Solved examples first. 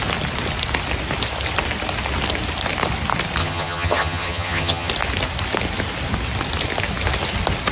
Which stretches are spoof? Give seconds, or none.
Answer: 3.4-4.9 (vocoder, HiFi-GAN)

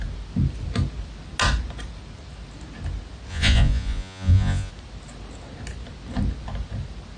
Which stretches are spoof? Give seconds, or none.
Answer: 3.3-4.7 (vocoder, Vocos)

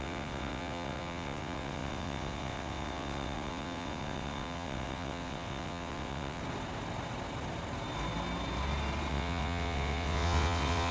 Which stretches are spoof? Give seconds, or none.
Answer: 0.0-6.4 (vocoder, WaveNeXt); 9.1-10.9